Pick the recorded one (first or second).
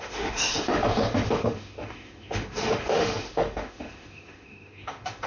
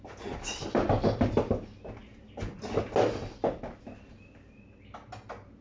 second